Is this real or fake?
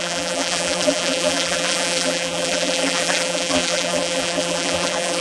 fake